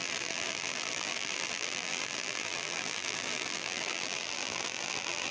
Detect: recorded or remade remade